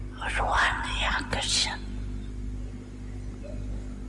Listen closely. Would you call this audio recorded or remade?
recorded